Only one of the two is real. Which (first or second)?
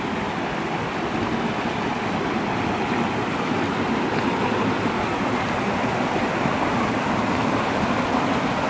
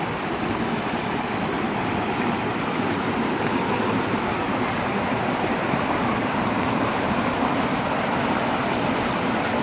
first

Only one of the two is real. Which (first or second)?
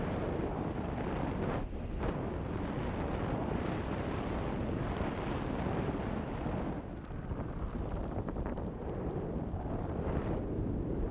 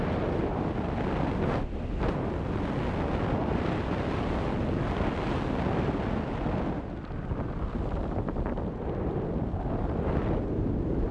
second